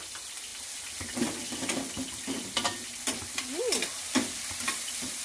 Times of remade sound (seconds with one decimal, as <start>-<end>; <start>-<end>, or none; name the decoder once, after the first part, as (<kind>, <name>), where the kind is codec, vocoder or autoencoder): none